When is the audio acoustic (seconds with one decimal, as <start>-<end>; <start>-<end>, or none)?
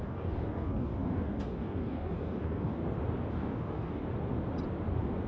2.8-3.3; 4.0-5.3